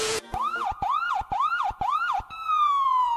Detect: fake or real fake